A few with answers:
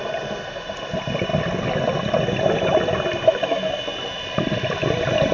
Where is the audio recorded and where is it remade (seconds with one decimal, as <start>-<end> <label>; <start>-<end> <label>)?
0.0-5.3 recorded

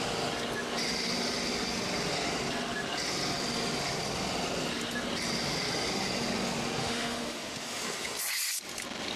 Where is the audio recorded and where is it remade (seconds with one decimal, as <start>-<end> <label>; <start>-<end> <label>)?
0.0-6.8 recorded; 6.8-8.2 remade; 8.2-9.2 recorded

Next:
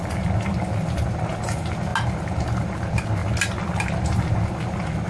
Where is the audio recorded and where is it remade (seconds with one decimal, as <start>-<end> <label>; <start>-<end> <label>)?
0.0-5.1 recorded

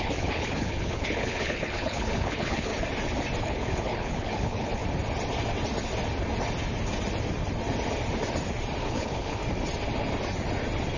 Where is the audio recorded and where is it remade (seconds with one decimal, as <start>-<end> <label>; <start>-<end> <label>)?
0.0-2.7 remade; 2.7-3.4 recorded; 3.4-4.8 remade; 4.8-8.8 recorded; 8.8-9.4 remade; 9.4-11.0 recorded

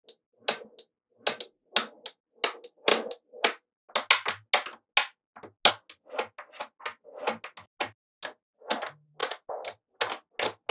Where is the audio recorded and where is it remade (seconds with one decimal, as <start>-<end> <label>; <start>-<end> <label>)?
0.0-10.7 recorded

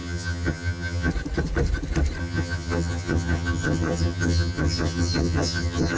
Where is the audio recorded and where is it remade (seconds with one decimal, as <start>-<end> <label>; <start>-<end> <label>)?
0.0-1.1 remade; 1.1-2.2 recorded; 2.2-6.0 remade